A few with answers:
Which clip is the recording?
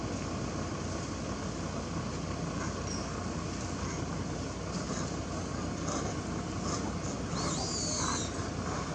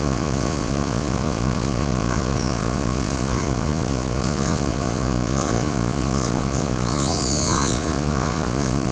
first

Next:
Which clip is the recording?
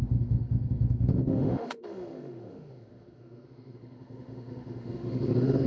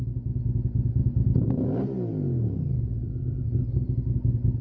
second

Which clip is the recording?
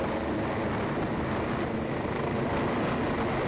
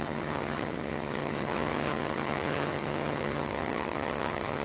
first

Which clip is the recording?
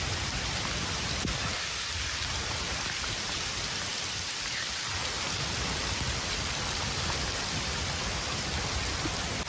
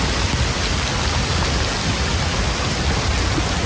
second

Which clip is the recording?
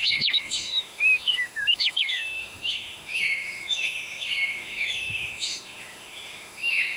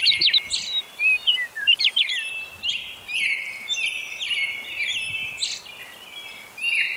second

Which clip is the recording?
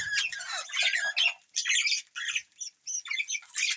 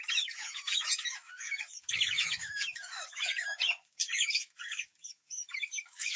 first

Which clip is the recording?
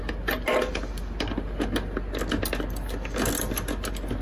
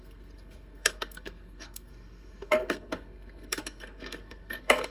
first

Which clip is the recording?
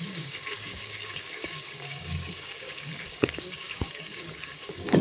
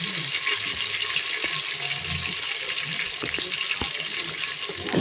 second